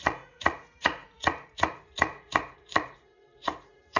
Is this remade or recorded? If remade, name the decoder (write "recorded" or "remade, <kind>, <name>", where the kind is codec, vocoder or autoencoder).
remade, vocoder, Vocos